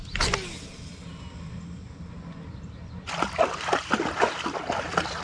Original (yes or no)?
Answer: yes